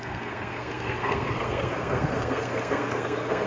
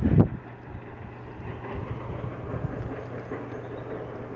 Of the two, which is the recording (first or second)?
second